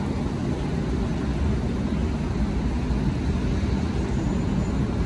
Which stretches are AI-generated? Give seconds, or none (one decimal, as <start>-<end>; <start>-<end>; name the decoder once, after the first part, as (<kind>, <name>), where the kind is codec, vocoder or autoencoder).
none